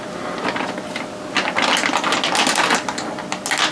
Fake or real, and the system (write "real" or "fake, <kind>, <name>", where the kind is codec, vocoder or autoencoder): real